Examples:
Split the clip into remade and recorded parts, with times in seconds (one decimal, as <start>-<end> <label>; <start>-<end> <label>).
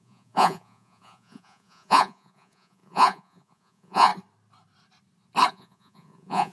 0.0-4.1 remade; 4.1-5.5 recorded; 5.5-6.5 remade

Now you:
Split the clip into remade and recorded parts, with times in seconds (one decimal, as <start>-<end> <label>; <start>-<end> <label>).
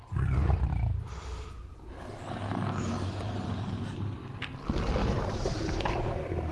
0.0-5.0 recorded; 5.0-6.0 remade; 6.0-6.5 recorded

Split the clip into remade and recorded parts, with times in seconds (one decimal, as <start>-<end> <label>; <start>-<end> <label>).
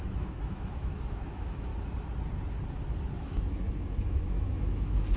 0.0-1.7 remade; 1.7-3.2 recorded; 3.2-5.2 remade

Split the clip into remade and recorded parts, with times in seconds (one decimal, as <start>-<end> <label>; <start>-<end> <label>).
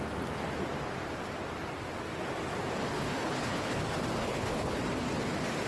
0.0-2.8 recorded; 2.8-3.8 remade; 3.8-4.2 recorded; 4.2-4.8 remade; 4.8-5.7 recorded